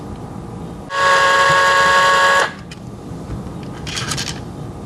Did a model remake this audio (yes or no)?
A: no